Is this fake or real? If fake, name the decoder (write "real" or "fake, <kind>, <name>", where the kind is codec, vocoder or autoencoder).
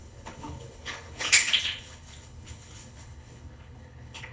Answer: fake, codec, HILCodec